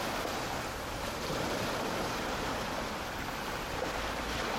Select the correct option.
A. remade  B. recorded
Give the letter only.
B